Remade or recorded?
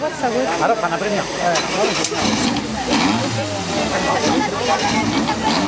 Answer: recorded